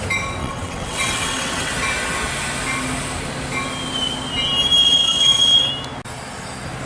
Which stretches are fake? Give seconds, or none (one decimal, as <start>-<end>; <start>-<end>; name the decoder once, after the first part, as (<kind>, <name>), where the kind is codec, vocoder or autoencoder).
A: 0.4-1.7 (vocoder, WaveNeXt); 4.8-5.7